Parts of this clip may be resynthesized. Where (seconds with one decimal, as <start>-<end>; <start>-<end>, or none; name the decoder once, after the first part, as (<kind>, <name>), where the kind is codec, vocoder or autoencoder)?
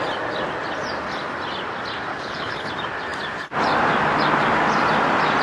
2.1-2.7 (codec, HILCodec)